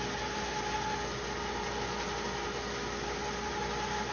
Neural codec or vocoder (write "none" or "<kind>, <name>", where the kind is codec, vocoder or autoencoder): none